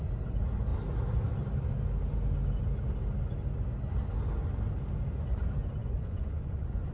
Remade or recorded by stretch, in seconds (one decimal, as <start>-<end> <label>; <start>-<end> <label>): 0.0-5.8 recorded; 5.8-6.9 remade